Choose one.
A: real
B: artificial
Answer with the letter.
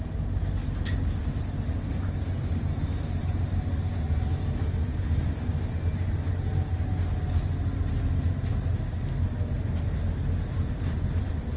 A